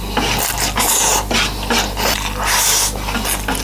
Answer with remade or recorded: recorded